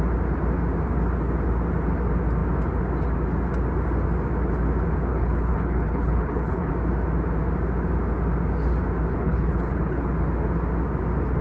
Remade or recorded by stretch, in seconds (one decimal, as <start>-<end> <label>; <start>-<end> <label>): 0.0-5.1 recorded; 5.1-6.7 remade; 6.7-9.1 recorded; 9.1-10.1 remade; 10.1-11.4 recorded